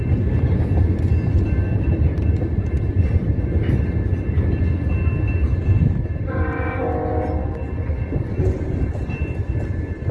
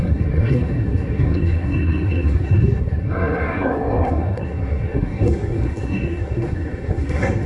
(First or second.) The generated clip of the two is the second